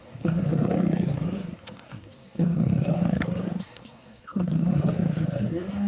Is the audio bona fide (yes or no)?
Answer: no